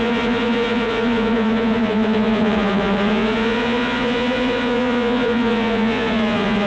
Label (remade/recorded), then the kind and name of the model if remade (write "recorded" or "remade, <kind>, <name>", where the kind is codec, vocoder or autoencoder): remade, vocoder, Vocos